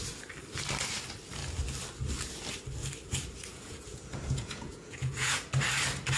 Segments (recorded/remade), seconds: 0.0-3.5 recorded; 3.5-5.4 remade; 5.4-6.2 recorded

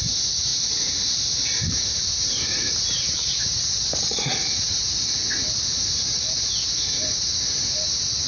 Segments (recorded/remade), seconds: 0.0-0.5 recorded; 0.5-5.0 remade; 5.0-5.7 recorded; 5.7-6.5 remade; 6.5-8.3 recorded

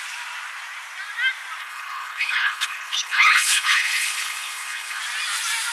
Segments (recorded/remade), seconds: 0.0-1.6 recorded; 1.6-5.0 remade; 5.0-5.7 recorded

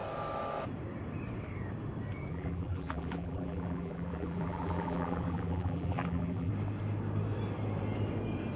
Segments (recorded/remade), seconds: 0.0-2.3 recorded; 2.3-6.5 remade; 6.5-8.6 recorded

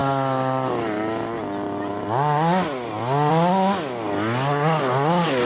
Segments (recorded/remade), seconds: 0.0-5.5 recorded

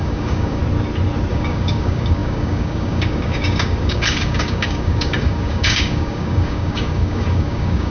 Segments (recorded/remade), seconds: 0.0-0.6 remade; 0.6-1.3 recorded; 1.3-7.9 remade

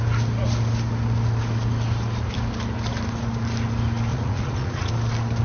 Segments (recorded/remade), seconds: 0.0-4.1 recorded; 4.1-4.9 remade; 4.9-5.4 recorded

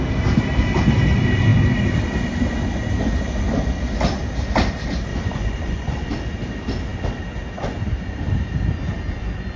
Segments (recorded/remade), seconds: 0.0-5.1 recorded; 5.1-6.1 remade; 6.1-9.6 recorded